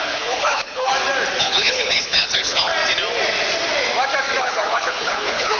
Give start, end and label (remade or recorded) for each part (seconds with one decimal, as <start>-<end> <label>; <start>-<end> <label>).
0.0-0.9 remade; 0.9-1.4 recorded; 1.4-2.7 remade; 2.7-4.4 recorded; 4.4-5.6 remade